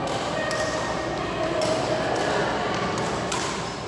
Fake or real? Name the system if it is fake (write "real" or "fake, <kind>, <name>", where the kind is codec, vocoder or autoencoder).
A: real